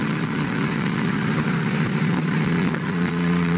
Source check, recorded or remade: remade